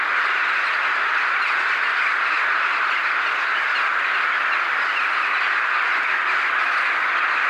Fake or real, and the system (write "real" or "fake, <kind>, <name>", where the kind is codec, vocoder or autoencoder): real